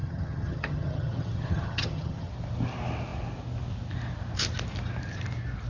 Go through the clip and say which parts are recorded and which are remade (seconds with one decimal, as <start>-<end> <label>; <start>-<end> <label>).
0.0-2.3 remade; 2.3-5.7 recorded